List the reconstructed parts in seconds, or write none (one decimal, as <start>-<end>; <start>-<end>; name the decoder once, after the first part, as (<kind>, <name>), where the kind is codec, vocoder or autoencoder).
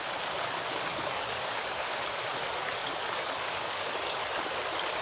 0.9-2.0 (codec, DAC); 2.8-4.2